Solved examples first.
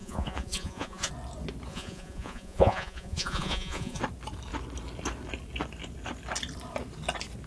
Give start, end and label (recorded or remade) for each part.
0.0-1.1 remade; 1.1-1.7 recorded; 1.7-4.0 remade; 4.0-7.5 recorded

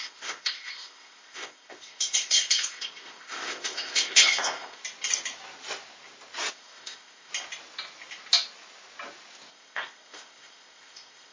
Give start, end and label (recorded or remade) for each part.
0.0-4.8 remade; 4.8-6.5 recorded; 6.5-7.3 remade; 7.3-9.5 recorded; 9.5-11.3 remade

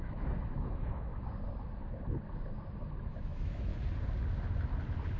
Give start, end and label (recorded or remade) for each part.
0.0-1.1 remade; 1.1-3.0 recorded; 3.0-3.7 remade; 3.7-5.2 recorded

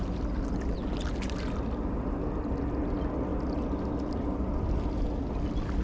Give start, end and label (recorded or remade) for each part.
0.0-5.8 recorded

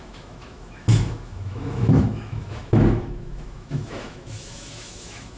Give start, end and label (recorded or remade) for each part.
0.0-5.4 remade